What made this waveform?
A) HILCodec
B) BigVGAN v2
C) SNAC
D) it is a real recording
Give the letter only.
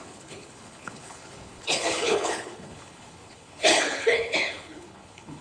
A